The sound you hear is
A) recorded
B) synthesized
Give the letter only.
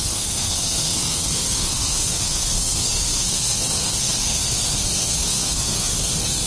B